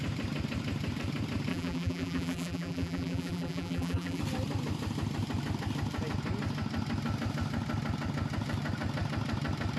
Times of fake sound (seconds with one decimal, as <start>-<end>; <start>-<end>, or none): 1.5-4.2